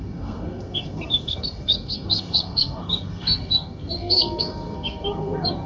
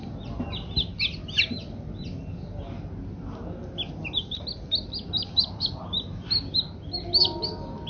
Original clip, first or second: second